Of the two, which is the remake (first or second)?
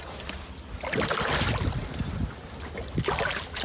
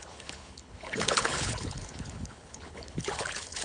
second